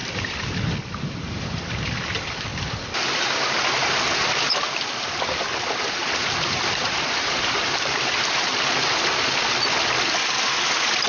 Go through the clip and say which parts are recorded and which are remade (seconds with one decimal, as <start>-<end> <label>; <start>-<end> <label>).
0.0-11.1 recorded